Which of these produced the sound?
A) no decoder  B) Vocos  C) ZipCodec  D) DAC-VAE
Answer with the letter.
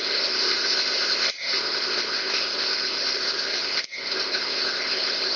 C